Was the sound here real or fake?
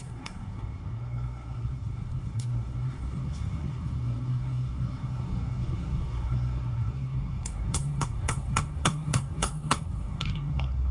fake